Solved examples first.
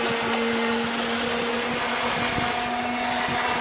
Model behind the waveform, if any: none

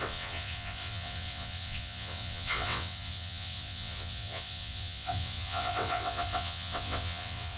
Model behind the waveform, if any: vocoder, WaveNeXt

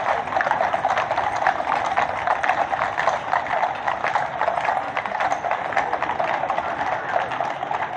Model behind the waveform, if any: none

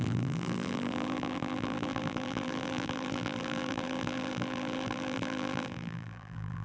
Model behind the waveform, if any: vocoder, BigVGAN v2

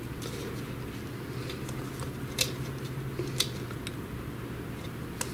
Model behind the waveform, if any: none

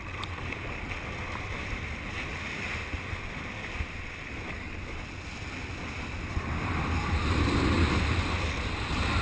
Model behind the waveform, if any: none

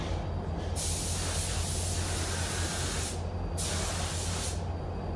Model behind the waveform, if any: none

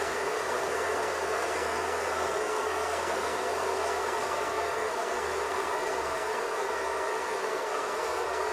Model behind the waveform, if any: codec, SNAC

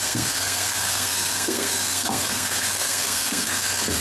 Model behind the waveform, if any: codec, SNAC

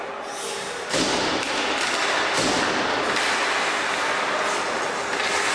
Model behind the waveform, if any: none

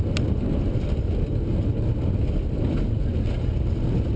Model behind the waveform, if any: none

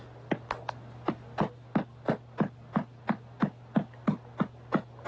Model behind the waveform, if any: none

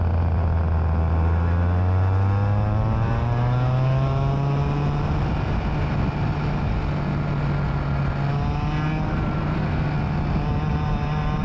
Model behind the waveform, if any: none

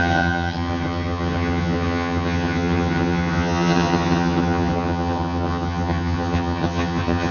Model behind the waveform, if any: vocoder, HiFi-GAN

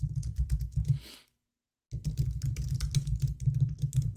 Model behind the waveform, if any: none